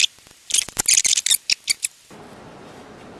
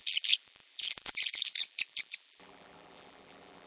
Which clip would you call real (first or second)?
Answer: first